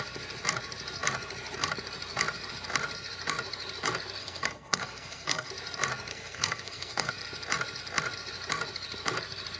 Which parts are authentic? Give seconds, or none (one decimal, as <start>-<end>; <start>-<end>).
0.0-4.2; 5.5-6.1; 7.1-9.6